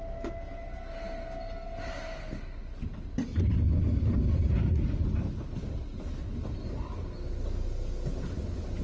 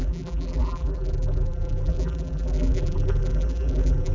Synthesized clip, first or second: second